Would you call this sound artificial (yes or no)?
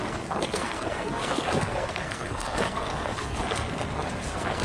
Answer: yes